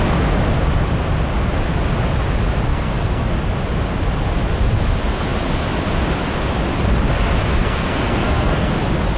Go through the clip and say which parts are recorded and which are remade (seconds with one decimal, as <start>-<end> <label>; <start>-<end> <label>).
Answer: 0.0-2.7 recorded; 2.7-3.3 remade; 3.3-7.6 recorded; 7.6-8.7 remade; 8.7-9.2 recorded